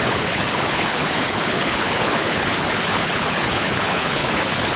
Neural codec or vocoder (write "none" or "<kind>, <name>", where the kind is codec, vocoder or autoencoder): codec, HILCodec